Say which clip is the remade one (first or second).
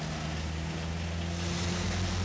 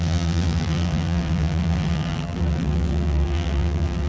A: second